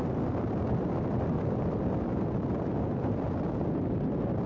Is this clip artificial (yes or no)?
no